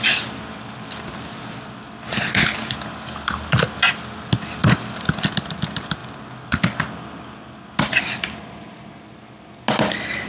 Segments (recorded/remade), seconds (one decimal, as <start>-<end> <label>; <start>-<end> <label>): 0.0-2.6 recorded; 2.6-3.8 remade; 3.8-10.3 recorded